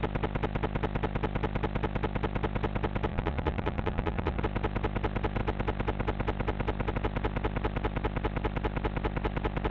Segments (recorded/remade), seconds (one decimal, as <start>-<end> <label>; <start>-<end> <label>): 0.0-3.1 recorded; 3.1-4.4 remade; 4.4-9.7 recorded